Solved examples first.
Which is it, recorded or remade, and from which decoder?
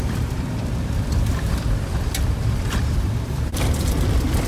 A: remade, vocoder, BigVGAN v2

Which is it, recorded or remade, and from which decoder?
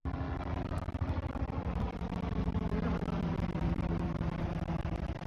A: remade, vocoder, BigVGAN v2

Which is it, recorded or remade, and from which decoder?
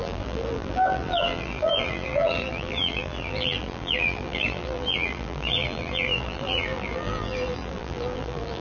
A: remade, vocoder, BigVGAN v2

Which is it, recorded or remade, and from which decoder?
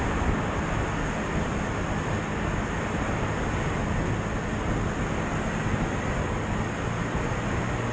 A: recorded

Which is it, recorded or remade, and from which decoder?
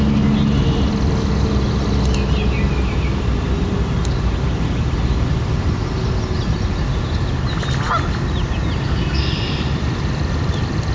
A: recorded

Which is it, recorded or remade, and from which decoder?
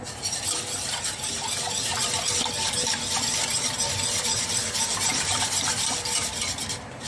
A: recorded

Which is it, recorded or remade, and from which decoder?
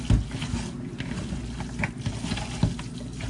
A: recorded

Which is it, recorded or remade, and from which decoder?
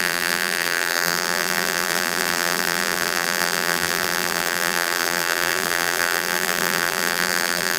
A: remade, vocoder, BigVGAN v2